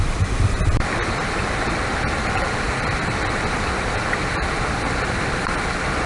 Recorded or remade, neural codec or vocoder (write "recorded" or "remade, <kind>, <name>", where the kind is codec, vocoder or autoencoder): remade, vocoder, BigVGAN v2